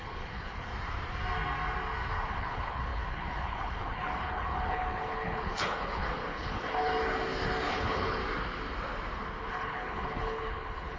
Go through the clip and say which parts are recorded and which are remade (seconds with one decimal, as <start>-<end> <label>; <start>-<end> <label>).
0.0-0.7 remade; 0.7-2.3 recorded; 2.3-6.9 remade; 6.9-7.7 recorded; 7.7-8.2 remade; 8.2-9.4 recorded; 9.4-11.0 remade